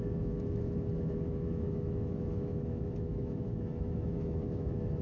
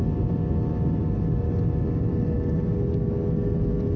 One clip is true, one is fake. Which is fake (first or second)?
first